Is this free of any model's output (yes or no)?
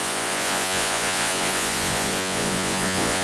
no